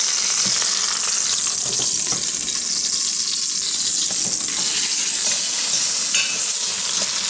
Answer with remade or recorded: recorded